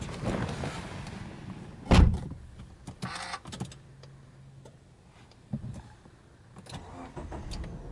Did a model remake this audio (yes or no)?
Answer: no